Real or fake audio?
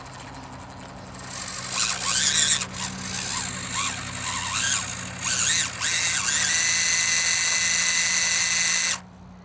real